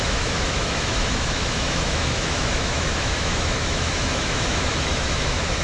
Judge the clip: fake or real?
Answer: fake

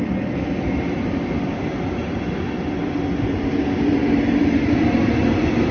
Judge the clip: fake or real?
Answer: real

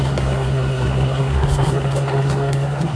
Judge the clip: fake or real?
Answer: fake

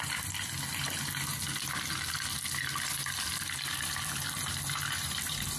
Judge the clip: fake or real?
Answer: real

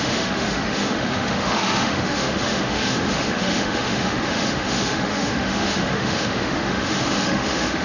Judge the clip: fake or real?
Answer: fake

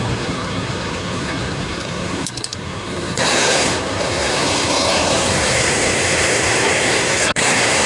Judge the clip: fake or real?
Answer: fake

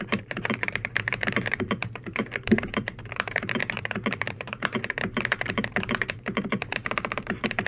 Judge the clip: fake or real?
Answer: fake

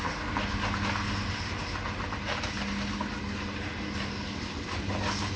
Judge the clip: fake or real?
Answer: real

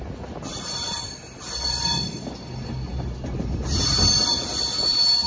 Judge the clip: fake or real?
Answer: real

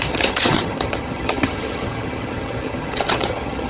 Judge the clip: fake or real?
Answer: fake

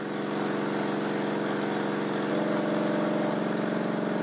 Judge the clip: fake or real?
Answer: real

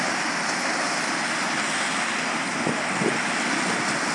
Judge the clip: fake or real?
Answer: real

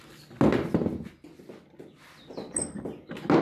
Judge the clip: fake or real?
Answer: real